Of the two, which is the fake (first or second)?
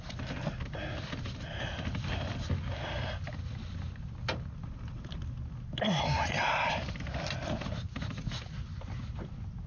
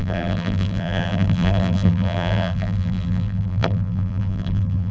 second